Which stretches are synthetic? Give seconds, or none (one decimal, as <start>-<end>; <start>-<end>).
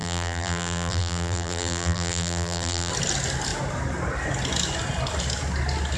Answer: 0.0-2.9